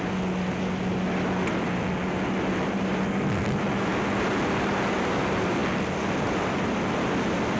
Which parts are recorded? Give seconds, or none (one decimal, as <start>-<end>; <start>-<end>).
0.0-7.6